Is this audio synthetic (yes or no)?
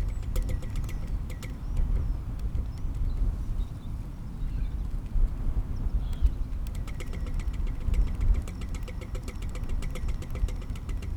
no